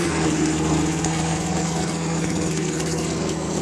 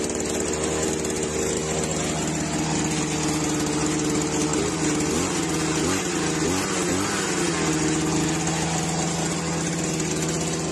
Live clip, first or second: second